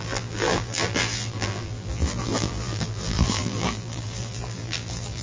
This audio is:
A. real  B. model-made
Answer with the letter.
B